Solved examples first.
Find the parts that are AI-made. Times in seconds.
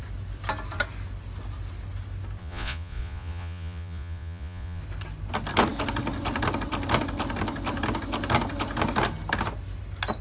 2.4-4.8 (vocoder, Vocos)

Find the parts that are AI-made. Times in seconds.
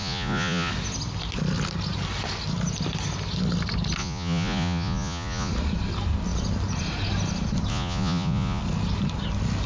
0.0-0.7 (vocoder, Vocos); 4.0-5.5; 7.7-8.6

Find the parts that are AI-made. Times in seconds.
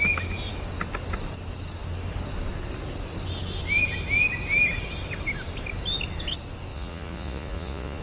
6.7-8.0 (vocoder, Vocos)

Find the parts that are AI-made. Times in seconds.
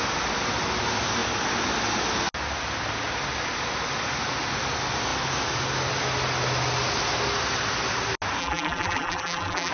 8.4-9.7 (vocoder, BigVGAN v2)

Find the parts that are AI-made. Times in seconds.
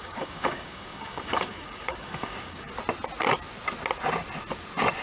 0.0-2.7 (codec, DAC)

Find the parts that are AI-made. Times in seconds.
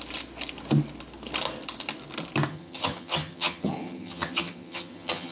2.5-5.3 (vocoder, HiFi-GAN)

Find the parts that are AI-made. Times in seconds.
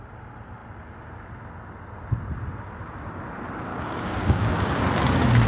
3.7-4.8 (codec, DAC)